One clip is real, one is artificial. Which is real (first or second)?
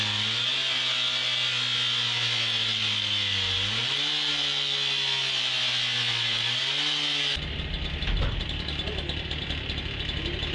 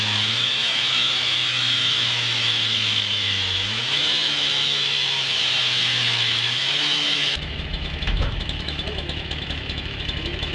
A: first